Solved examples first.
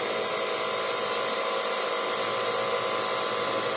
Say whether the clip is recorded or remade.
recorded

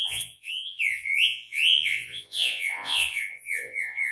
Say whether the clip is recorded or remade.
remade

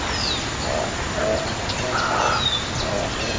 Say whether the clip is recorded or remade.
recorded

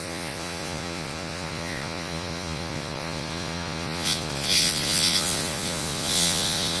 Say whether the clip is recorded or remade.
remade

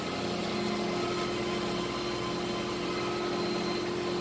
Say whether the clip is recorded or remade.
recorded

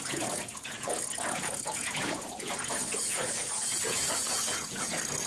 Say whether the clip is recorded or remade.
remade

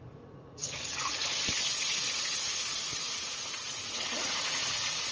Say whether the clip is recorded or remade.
remade